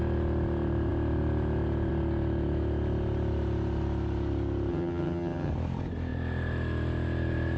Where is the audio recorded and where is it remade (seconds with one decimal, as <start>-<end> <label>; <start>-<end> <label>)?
0.0-4.7 recorded; 4.7-5.5 remade; 5.5-7.6 recorded